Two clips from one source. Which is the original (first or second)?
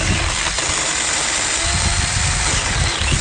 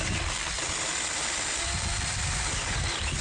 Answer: first